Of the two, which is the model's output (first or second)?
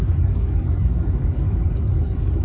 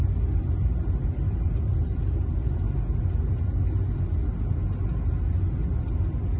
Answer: first